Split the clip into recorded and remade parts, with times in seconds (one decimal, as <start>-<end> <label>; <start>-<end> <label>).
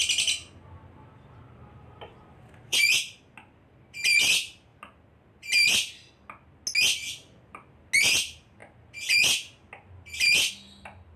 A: 0.0-1.7 recorded; 1.7-2.8 remade; 2.8-11.2 recorded